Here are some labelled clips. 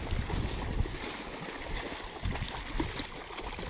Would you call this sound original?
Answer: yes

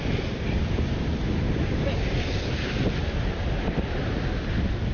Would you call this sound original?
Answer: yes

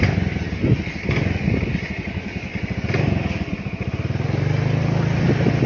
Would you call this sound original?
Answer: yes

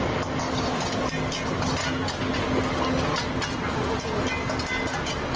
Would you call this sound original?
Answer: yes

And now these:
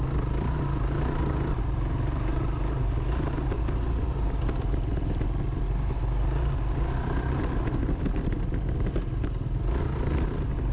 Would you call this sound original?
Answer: yes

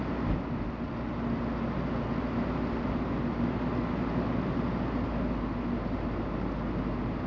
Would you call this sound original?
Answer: yes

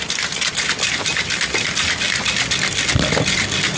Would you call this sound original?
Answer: yes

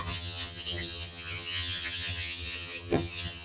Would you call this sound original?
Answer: no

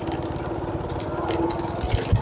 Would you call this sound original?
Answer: yes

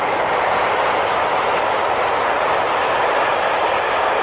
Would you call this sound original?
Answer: yes